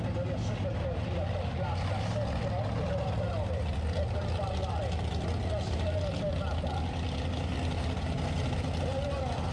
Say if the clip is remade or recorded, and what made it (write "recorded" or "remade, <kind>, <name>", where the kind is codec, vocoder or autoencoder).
recorded